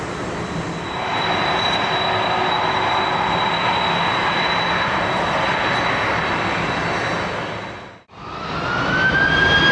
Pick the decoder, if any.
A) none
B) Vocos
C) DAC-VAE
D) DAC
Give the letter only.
A